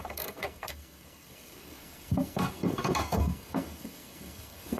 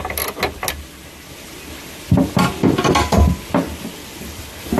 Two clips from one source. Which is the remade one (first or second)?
first